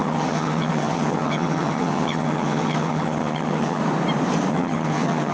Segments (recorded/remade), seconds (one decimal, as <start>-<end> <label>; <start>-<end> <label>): 0.0-3.8 remade; 3.8-4.5 recorded; 4.5-5.3 remade